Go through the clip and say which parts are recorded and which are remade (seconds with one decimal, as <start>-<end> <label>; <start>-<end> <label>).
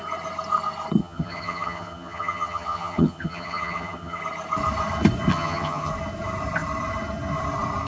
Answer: 0.0-1.0 recorded; 1.0-4.2 remade; 4.2-5.3 recorded; 5.3-5.9 remade; 5.9-7.9 recorded